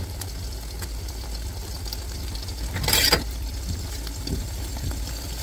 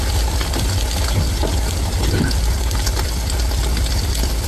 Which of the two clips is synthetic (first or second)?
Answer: second